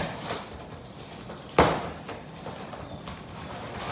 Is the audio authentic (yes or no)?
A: yes